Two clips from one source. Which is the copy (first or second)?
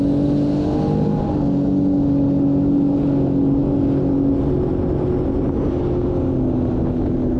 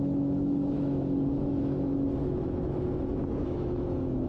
second